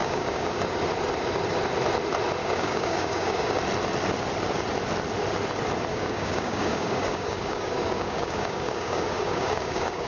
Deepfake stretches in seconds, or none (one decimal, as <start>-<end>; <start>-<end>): 0.0-0.6; 2.4-3.6; 5.9-10.1